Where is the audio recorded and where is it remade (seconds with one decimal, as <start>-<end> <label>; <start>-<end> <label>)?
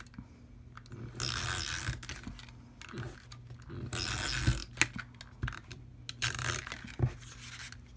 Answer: 0.0-8.0 recorded